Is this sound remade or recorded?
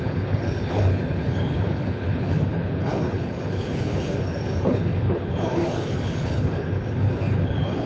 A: remade